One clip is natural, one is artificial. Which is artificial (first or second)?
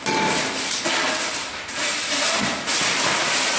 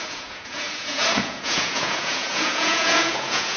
second